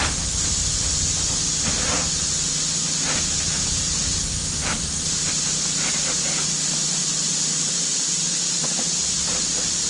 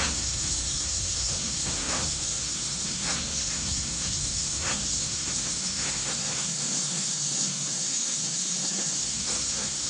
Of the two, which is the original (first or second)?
first